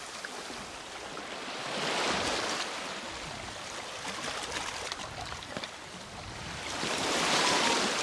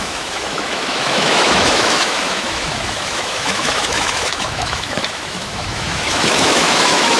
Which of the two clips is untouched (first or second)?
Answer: first